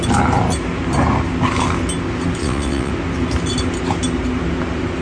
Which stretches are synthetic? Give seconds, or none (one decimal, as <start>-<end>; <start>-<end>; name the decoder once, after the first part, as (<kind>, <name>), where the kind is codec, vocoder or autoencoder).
2.4-2.9 (vocoder, WaveNeXt)